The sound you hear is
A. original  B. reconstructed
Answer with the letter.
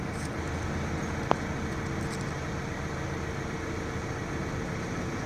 A